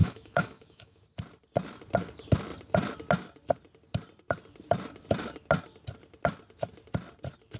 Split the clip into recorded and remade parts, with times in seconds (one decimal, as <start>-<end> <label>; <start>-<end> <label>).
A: 0.0-1.0 remade; 1.0-7.6 recorded